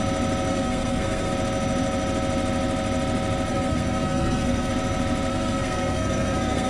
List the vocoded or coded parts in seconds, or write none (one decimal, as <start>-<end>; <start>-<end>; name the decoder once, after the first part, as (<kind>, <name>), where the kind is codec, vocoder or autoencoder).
0.5-1.3 (codec, SNAC); 3.5-4.7; 5.3-6.7